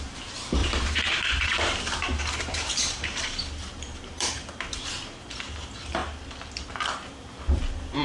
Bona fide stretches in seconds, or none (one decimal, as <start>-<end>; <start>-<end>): 6.0-6.6

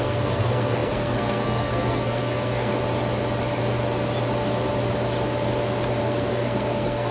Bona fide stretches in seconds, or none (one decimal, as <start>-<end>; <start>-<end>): 2.7-6.0

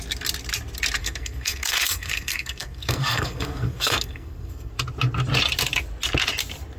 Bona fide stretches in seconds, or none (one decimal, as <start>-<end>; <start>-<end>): 0.0-1.0; 4.7-6.8

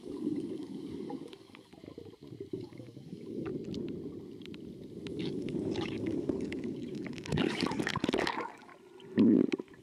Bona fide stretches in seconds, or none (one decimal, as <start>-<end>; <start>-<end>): 1.7-2.5; 3.5-5.1; 8.7-9.8

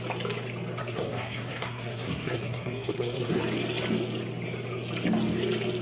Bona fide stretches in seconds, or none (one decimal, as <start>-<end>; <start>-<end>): 0.0-0.8; 3.4-5.8

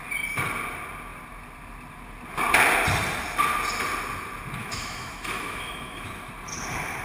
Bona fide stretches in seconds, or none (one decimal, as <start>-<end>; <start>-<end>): 0.0-4.6; 6.3-7.0

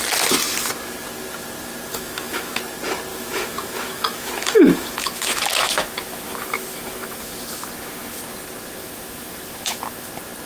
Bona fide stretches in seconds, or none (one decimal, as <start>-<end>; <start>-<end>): 0.0-1.9; 2.6-3.1; 8.2-8.8; 10.1-10.5